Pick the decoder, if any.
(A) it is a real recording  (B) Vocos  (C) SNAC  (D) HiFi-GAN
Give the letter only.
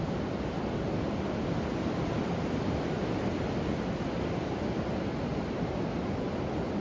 A